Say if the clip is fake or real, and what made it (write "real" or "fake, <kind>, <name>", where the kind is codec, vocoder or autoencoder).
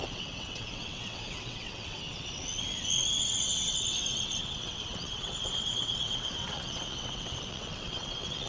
fake, vocoder, WaveNeXt